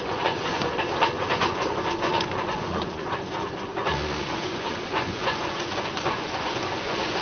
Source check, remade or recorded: remade